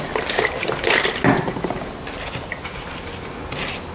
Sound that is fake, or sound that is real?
real